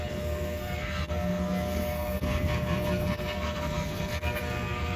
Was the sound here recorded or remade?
remade